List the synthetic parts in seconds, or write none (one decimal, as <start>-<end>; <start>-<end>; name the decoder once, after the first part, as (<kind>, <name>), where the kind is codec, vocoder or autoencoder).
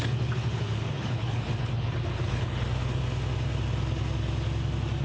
0.0-3.0 (codec, HILCodec)